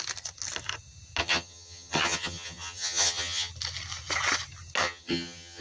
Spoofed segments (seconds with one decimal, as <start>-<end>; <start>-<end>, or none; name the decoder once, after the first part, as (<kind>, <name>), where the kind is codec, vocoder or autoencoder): 1.2-3.5 (vocoder, HiFi-GAN); 4.8-5.6